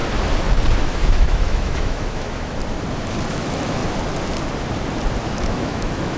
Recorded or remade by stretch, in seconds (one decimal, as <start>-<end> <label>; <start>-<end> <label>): 0.0-0.8 recorded; 0.8-2.6 remade; 2.6-3.3 recorded; 3.3-3.8 remade; 3.8-5.2 recorded; 5.2-6.2 remade